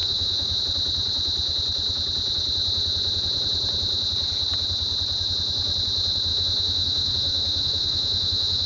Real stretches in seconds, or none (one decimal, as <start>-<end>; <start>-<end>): 0.6-6.3